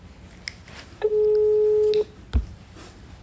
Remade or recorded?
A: recorded